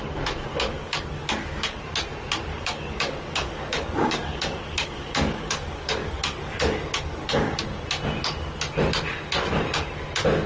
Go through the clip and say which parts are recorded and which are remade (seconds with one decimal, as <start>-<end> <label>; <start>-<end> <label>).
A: 0.0-0.5 recorded; 0.5-1.8 remade; 1.8-2.5 recorded; 2.5-7.6 remade; 7.6-10.5 recorded